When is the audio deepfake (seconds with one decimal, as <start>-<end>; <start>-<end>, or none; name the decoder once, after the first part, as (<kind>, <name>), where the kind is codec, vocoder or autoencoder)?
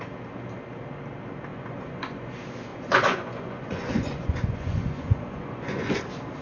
1.5-2.3 (vocoder, Vocos); 2.7-6.0